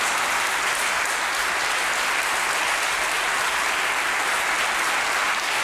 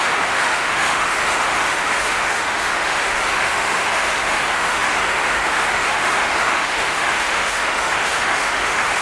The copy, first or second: second